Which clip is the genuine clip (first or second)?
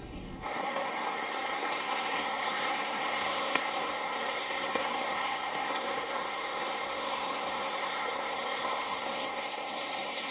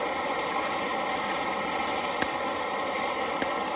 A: second